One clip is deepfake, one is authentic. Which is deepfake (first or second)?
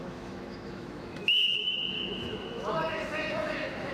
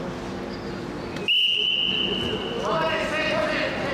first